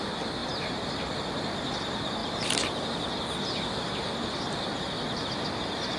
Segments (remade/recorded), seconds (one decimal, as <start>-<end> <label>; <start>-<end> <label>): 0.0-6.0 recorded